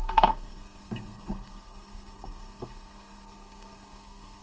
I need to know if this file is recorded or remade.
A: remade